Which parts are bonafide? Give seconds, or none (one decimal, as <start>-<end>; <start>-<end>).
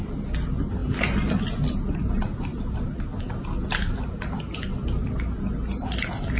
0.0-6.4